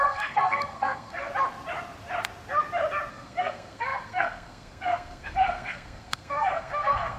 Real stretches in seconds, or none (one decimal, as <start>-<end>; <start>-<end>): 1.3-3.1